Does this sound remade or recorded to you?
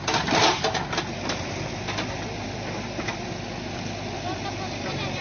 recorded